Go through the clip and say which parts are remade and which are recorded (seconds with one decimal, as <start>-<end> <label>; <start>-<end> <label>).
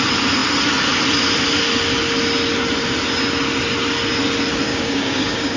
0.0-4.7 recorded; 4.7-5.6 remade